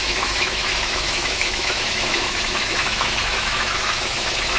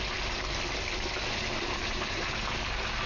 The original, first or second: second